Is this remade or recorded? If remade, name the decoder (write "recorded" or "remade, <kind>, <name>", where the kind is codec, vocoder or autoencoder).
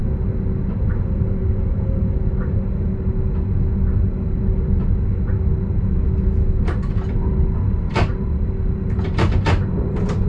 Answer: recorded